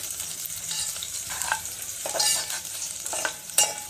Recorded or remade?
remade